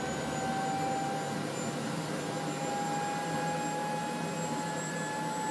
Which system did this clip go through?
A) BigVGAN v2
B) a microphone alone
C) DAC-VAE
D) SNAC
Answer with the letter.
B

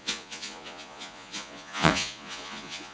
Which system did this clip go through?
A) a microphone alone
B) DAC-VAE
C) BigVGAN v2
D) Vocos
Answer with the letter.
D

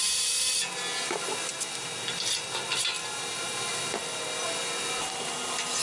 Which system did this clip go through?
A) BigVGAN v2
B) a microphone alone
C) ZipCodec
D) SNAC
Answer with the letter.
B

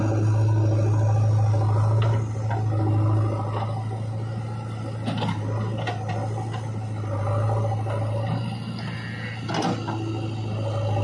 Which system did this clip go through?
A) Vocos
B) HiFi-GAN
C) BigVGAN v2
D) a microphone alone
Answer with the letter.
D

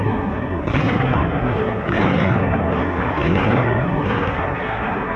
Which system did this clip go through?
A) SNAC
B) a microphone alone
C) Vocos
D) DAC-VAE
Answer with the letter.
A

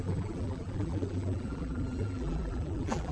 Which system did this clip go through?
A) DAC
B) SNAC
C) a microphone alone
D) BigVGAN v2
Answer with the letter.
D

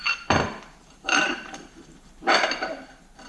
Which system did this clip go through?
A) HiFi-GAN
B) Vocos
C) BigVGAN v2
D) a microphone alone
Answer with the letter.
C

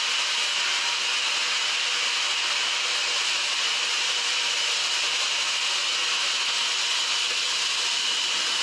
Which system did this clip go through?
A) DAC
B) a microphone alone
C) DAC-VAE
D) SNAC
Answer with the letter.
B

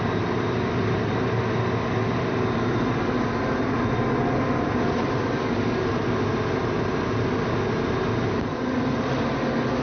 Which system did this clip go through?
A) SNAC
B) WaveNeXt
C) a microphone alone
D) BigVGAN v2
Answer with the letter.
C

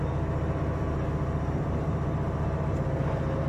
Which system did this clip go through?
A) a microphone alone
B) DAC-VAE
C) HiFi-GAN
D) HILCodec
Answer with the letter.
A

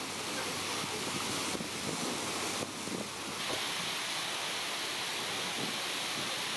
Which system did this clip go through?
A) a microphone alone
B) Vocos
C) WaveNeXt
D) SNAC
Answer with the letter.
A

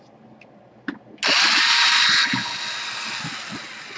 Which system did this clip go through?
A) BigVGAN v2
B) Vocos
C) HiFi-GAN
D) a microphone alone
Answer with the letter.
D